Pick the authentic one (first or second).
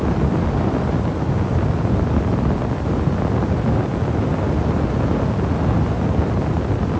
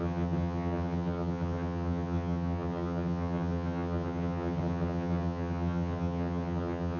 first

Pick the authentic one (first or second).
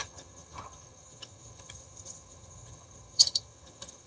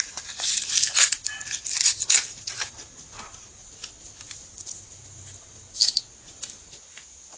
second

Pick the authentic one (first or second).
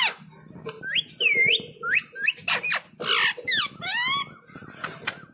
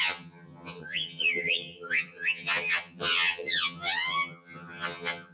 first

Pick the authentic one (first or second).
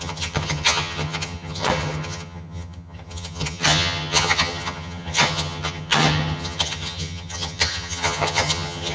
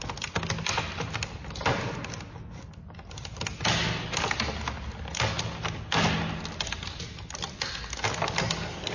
second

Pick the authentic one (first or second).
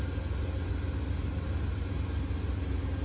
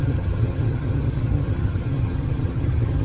first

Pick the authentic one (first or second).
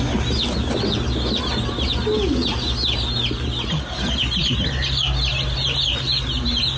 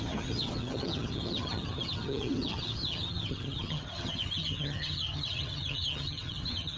first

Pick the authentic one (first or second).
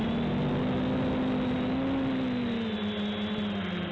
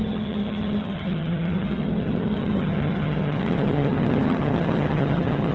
first